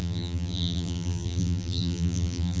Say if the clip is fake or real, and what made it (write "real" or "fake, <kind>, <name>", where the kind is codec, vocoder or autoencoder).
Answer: fake, vocoder, BigVGAN v2